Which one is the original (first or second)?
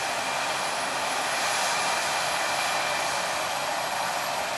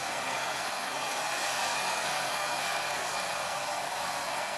first